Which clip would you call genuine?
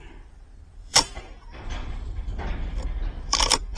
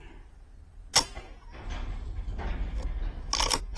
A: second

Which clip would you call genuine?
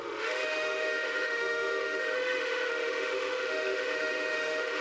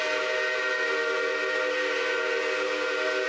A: second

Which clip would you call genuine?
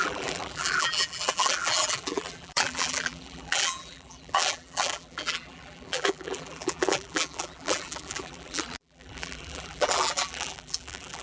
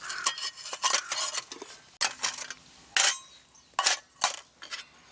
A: second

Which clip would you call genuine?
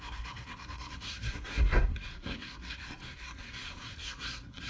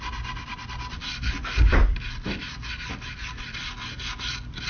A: second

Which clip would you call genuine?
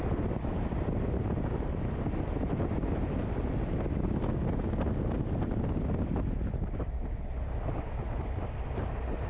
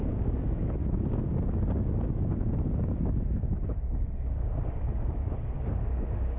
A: first